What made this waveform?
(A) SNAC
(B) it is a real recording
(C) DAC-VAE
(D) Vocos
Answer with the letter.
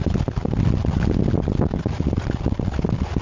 B